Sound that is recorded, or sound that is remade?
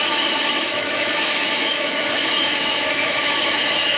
remade